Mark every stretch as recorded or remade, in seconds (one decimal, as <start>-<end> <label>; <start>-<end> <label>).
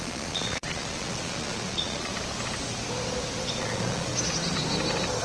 0.0-2.1 remade; 2.1-3.6 recorded; 3.6-4.1 remade; 4.1-5.2 recorded